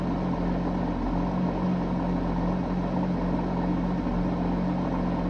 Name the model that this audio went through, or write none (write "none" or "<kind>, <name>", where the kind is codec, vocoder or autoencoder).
none